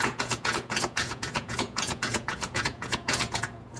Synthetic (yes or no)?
yes